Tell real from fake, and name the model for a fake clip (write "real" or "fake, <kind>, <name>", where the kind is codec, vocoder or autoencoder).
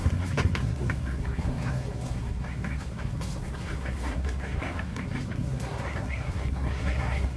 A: fake, codec, SNAC